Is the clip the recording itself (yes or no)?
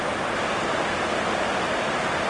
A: yes